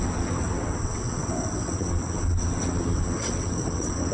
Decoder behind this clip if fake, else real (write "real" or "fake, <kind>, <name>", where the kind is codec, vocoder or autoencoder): fake, vocoder, WaveNeXt